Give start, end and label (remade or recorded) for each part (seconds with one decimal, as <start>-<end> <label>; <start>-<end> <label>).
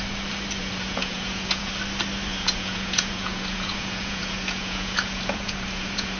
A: 0.0-0.6 recorded; 0.6-1.7 remade; 1.7-2.3 recorded; 2.3-6.2 remade